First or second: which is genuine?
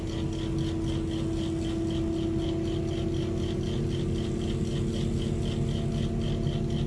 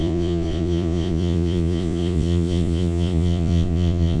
first